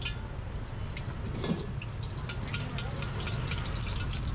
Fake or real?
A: real